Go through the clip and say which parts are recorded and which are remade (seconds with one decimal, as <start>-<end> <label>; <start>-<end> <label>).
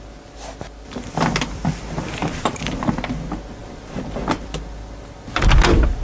0.0-6.0 recorded